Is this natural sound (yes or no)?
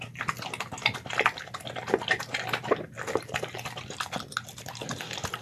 yes